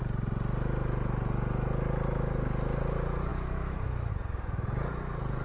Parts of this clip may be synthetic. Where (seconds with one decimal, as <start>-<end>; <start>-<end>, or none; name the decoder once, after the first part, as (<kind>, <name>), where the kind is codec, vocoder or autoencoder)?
3.3-4.1 (autoencoder, DAC-VAE)